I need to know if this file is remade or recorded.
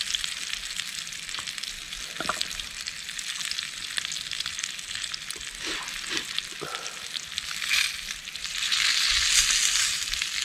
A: recorded